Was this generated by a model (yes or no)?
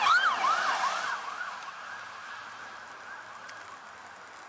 no